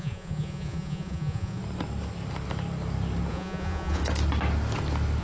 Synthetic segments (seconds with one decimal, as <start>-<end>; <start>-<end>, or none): 0.0-1.6; 3.3-4.0